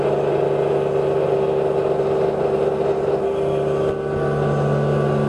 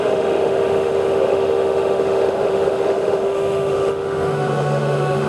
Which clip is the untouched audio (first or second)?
first